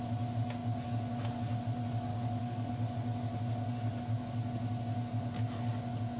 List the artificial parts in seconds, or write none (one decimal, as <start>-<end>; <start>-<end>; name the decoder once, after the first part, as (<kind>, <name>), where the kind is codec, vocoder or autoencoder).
2.1-2.7 (codec, DAC)

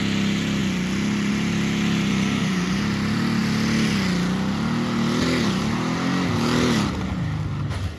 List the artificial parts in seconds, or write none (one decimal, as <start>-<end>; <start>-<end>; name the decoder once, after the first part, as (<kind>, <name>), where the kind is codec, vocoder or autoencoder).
2.1-2.8 (codec, SNAC)